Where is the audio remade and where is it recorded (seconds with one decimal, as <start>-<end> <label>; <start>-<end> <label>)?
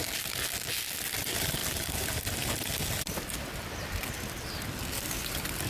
0.0-5.7 recorded